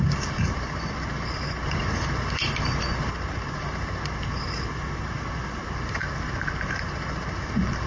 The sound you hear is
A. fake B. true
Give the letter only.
A